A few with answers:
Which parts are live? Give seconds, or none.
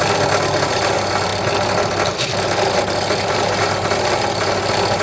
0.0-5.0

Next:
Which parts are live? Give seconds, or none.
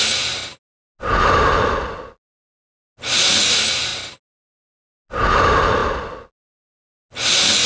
0.0-7.7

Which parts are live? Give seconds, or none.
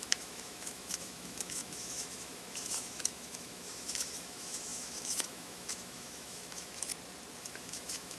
6.9-7.4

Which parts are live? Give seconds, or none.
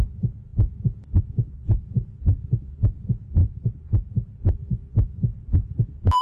0.0-3.4; 4.1-5.3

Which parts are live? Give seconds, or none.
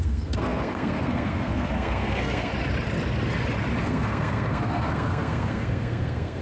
2.5-3.8